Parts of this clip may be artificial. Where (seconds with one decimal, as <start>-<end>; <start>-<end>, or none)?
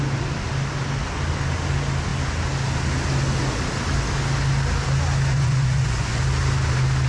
5.3-6.2